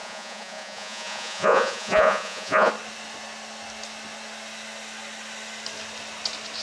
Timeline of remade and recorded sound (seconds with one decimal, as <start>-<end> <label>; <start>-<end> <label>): 0.0-2.7 remade; 2.7-6.6 recorded